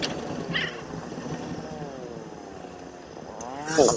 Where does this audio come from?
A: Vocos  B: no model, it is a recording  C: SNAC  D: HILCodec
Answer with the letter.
B